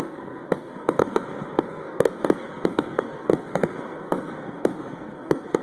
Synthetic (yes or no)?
yes